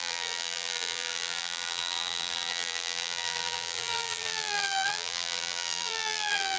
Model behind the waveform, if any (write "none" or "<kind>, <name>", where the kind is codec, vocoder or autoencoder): vocoder, BigVGAN v2